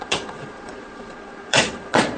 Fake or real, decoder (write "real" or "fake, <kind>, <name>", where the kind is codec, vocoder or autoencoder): fake, vocoder, Vocos